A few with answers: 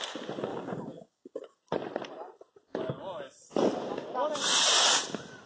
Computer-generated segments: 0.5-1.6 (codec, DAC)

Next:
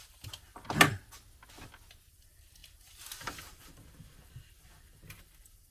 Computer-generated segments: 0.0-0.5 (vocoder, BigVGAN v2); 2.1-5.7

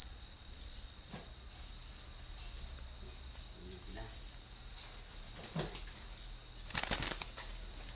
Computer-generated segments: 0.0-1.1 (vocoder, Vocos)

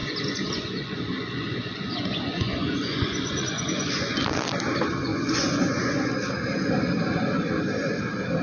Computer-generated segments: 0.0-4.2 (vocoder, Vocos); 5.1-6.1

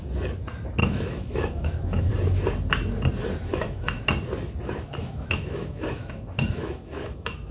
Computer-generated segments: 0.8-2.1 (autoencoder, DAC-VAE); 3.5-4.0; 5.0-7.5

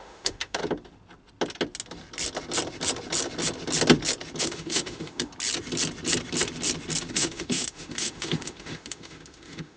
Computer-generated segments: 0.0-0.6 (autoencoder, DAC-VAE); 4.4-5.3; 7.1-9.8

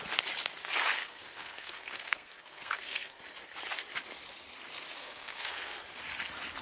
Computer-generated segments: 1.0-3.2 (codec, SNAC); 5.0-5.8

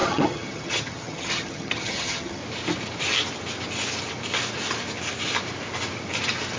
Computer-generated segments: 0.0-2.4 (vocoder, HiFi-GAN)